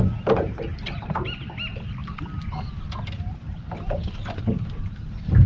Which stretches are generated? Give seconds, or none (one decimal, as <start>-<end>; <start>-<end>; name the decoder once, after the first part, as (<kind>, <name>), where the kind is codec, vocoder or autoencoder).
4.0-4.8 (vocoder, BigVGAN v2)